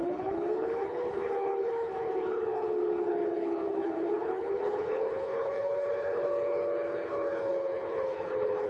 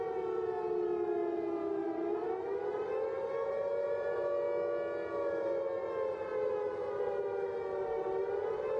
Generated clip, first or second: first